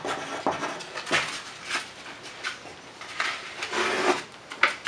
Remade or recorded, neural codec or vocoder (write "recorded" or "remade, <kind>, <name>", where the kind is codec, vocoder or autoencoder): recorded